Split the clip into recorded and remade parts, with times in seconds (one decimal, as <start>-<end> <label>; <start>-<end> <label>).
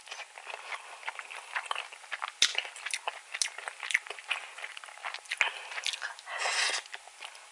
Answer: 0.0-7.5 recorded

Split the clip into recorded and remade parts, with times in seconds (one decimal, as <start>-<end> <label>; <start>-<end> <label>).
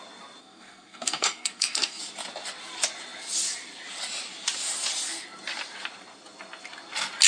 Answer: 0.0-0.4 recorded; 0.4-2.0 remade; 2.0-7.3 recorded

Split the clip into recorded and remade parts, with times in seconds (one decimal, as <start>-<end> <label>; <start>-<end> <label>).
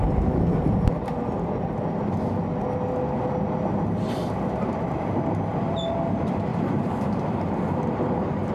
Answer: 0.0-4.2 recorded; 4.2-5.2 remade; 5.2-6.5 recorded; 6.5-8.0 remade; 8.0-8.5 recorded